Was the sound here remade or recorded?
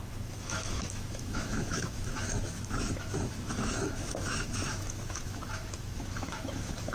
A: remade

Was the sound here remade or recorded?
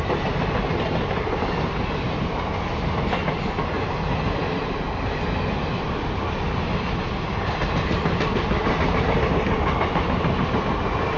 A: recorded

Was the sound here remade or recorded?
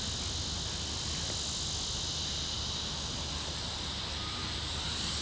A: recorded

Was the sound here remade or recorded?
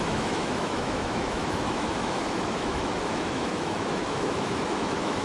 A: remade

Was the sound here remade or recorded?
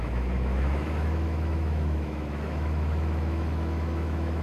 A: remade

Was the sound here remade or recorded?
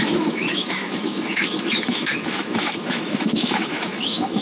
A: remade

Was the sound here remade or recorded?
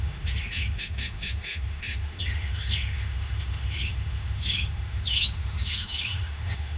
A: remade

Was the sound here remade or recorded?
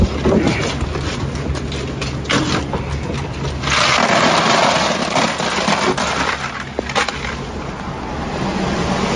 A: recorded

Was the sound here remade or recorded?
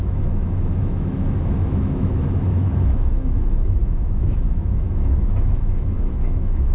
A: remade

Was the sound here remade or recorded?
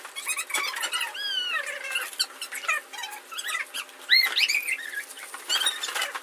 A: recorded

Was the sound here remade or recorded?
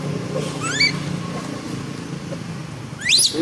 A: recorded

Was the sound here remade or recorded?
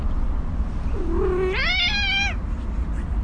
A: recorded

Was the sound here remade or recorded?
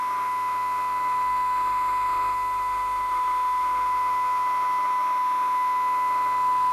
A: remade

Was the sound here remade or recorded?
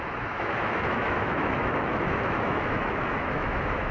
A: remade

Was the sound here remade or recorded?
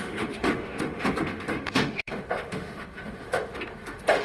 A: remade